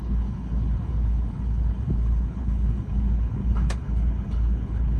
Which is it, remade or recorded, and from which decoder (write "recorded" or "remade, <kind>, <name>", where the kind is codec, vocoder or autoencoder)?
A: remade, codec, HILCodec